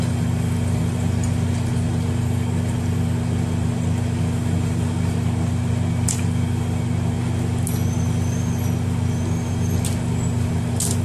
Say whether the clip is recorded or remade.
recorded